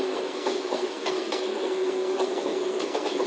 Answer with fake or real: fake